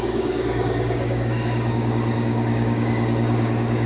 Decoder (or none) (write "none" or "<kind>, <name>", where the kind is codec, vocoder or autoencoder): codec, DAC